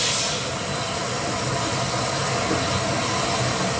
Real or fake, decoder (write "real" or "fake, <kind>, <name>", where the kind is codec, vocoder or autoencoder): real